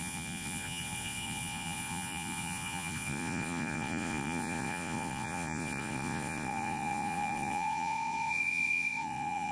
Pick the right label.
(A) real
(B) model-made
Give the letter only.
B